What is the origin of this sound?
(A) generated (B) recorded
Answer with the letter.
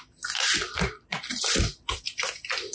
B